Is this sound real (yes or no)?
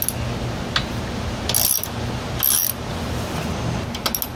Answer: yes